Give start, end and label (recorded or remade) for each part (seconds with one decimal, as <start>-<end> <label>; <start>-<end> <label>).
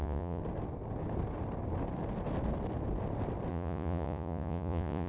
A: 0.0-0.4 remade; 0.4-3.5 recorded; 3.5-5.1 remade